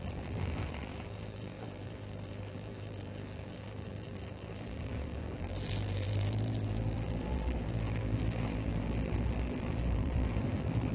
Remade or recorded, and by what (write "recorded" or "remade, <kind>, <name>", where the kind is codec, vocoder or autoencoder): remade, vocoder, BigVGAN v2